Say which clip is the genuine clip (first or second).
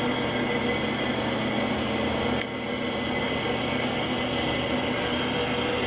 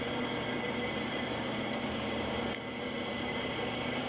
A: first